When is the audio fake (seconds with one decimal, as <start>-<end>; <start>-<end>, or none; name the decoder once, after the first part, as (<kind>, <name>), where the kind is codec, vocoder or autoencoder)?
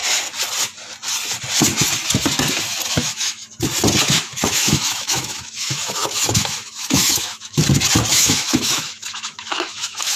2.9-3.4 (autoencoder, DAC-VAE); 4.0-7.6; 8.1-10.2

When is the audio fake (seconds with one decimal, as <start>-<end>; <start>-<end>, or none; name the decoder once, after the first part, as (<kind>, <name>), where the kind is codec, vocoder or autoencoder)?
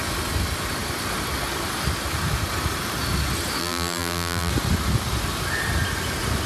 3.6-4.5 (vocoder, BigVGAN v2)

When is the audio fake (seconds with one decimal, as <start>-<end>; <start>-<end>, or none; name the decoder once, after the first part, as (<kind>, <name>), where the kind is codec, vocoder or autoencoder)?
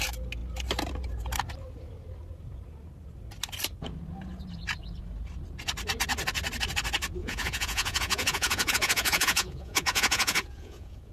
7.2-11.1 (vocoder, Vocos)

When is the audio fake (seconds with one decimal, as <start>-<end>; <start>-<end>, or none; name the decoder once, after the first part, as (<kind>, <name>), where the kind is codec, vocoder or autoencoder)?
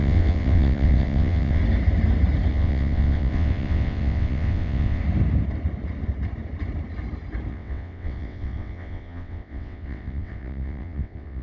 0.0-1.6 (vocoder, WaveNeXt); 2.5-5.0; 7.5-11.4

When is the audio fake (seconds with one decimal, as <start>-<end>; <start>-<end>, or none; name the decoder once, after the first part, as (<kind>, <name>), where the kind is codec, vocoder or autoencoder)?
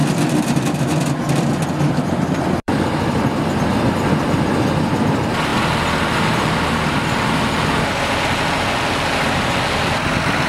0.0-5.0 (vocoder, BigVGAN v2)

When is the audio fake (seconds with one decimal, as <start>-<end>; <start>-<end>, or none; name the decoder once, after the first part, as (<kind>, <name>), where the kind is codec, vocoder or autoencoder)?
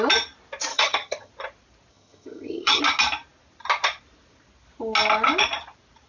0.7-1.3 (vocoder, HiFi-GAN); 1.9-2.8